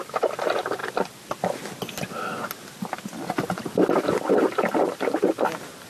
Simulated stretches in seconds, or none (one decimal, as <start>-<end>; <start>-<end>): none